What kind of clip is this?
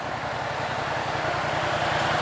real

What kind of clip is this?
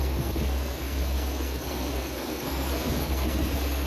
fake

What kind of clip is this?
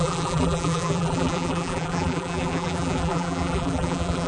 fake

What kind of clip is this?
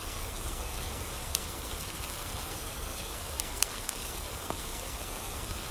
fake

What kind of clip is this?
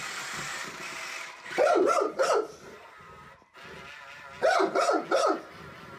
real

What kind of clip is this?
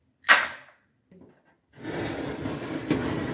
real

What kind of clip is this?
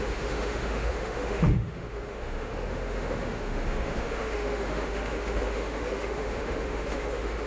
fake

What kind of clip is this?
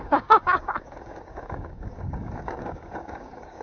fake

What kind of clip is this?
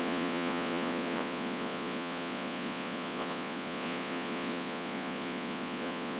fake